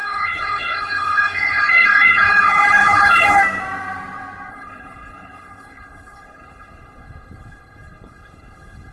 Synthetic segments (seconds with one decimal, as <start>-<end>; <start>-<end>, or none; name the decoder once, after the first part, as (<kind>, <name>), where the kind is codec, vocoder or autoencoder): 0.0-3.4 (codec, HILCodec); 4.5-8.9